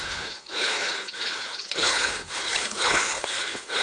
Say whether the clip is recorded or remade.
remade